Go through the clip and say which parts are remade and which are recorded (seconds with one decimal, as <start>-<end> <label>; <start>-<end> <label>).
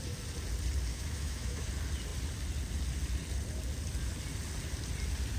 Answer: 0.0-0.9 recorded; 0.9-1.7 remade; 1.7-5.4 recorded